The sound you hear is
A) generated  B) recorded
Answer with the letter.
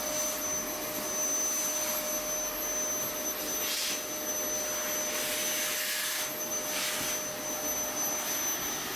B